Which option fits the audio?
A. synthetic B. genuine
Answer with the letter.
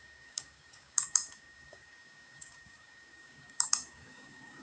A